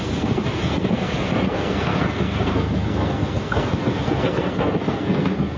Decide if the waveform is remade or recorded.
remade